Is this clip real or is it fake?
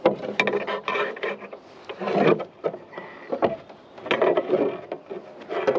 real